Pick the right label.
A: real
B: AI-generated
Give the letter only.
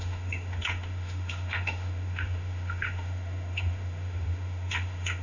B